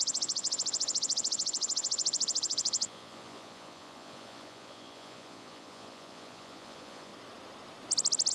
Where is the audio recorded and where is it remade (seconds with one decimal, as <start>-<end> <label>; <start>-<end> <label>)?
0.0-7.1 remade; 7.1-8.3 recorded